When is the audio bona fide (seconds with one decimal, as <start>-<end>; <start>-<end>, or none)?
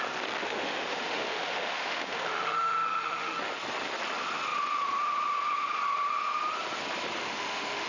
0.0-0.4; 3.5-7.2